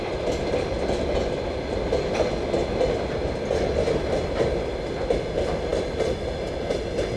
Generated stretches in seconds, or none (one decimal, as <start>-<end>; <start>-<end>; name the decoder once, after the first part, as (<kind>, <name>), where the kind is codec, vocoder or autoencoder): none